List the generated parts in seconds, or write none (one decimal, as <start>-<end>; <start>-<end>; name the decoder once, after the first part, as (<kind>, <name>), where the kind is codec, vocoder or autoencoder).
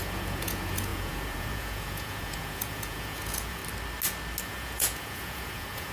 0.0-3.6 (vocoder, Vocos); 4.4-5.9